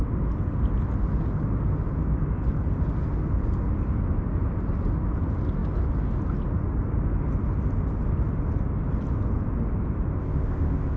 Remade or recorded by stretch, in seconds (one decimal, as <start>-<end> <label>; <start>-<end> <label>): 0.0-10.2 recorded; 10.2-11.0 remade